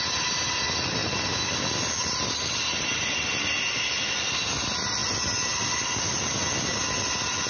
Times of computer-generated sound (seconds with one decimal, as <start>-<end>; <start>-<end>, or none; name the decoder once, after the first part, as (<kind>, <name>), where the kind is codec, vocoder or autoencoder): none